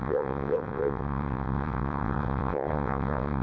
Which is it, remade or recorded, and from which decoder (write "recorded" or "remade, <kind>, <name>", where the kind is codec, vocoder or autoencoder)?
remade, vocoder, WaveNeXt